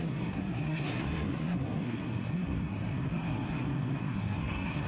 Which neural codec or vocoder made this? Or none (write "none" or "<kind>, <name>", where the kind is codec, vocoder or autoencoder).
codec, SNAC